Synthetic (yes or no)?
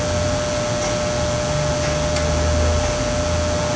no